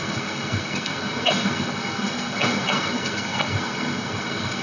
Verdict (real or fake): fake